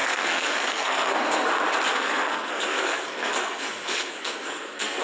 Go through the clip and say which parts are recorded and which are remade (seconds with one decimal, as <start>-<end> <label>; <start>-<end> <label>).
0.0-1.5 remade; 1.5-1.9 recorded; 1.9-5.0 remade